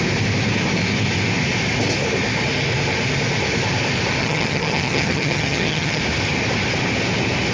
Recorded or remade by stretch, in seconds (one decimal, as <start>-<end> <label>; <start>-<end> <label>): 0.0-4.2 recorded; 4.2-6.0 remade; 6.0-7.5 recorded